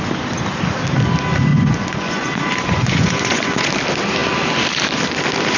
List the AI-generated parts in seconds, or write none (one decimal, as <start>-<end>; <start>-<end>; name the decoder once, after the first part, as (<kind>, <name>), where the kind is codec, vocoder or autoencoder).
1.5-3.7 (vocoder, Vocos)